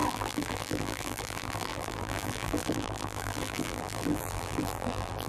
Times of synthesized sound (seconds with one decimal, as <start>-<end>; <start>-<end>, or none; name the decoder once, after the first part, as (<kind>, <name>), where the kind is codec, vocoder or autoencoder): 0.0-5.3 (vocoder, BigVGAN v2)